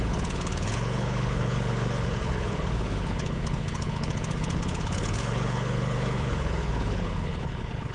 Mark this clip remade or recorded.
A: remade